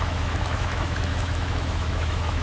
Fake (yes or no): yes